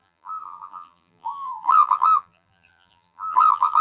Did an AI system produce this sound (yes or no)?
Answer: yes